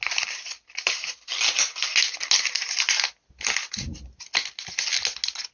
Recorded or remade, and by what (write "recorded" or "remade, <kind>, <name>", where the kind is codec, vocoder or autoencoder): recorded